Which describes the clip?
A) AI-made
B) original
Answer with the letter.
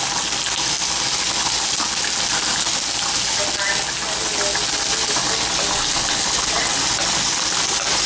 B